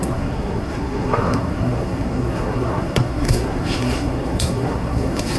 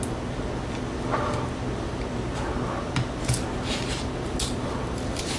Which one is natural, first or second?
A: second